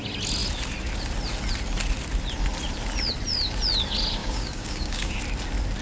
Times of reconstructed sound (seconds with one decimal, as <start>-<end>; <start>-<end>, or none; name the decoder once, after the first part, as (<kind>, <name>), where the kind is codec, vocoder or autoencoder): 4.2-5.2 (codec, DAC)